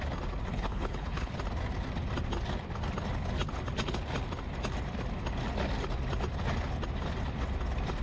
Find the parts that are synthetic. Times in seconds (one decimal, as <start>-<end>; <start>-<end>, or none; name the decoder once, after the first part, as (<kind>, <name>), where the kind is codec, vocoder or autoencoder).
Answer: 0.5-1.3 (codec, HILCodec)